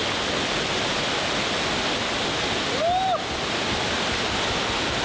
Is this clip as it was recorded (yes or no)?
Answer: yes